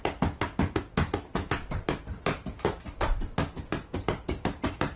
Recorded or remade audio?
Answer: recorded